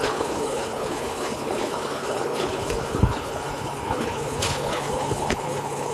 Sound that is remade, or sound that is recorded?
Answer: remade